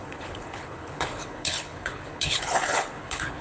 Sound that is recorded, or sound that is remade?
remade